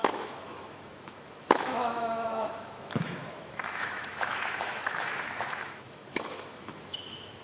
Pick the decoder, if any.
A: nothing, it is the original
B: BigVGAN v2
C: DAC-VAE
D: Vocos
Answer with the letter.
C